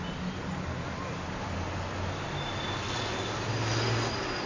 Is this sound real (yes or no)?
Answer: yes